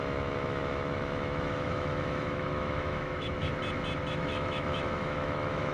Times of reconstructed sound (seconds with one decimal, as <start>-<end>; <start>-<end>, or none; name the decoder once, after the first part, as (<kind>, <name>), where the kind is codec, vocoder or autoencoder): 0.0-3.5 (autoencoder, DAC-VAE); 4.1-5.7

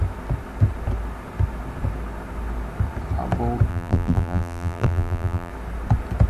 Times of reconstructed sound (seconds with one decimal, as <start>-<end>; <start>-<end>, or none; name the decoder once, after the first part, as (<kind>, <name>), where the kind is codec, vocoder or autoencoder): 3.7-5.5 (vocoder, BigVGAN v2)

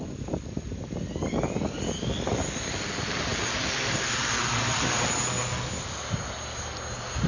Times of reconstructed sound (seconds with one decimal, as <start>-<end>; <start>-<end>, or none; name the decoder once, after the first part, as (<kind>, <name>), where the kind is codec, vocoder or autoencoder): none

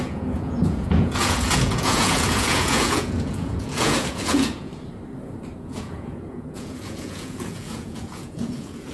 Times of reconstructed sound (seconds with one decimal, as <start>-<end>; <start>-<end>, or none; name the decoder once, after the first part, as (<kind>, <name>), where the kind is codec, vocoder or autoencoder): 0.0-4.7 (vocoder, Vocos); 5.6-8.9

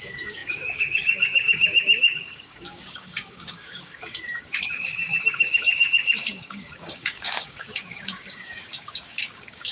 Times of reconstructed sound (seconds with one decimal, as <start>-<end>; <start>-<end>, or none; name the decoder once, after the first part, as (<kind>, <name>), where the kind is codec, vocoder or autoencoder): 0.0-9.7 (codec, DAC)

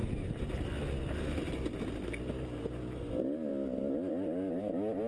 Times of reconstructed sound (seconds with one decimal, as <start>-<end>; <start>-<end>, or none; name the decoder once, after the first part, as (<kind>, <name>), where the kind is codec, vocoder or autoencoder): none

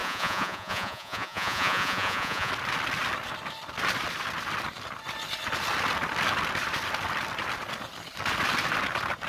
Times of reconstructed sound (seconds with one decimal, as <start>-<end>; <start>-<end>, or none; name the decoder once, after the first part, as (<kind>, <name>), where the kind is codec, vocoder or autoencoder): 0.0-2.5 (vocoder, Vocos)

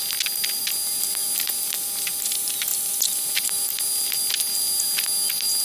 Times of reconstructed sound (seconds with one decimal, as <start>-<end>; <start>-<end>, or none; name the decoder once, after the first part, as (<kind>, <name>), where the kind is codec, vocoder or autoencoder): none